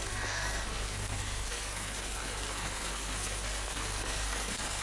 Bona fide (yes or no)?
no